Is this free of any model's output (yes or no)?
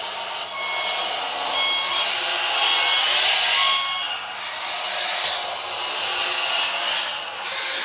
yes